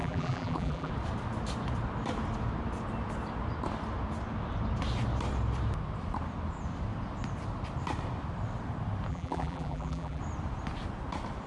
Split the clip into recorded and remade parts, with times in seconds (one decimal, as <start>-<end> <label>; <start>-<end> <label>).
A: 0.0-0.9 remade; 0.9-9.1 recorded; 9.1-10.2 remade; 10.2-11.5 recorded